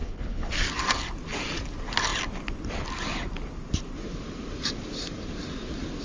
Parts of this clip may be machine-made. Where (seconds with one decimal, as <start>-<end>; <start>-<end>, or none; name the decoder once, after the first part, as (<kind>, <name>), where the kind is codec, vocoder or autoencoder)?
0.0-0.5 (codec, HILCodec)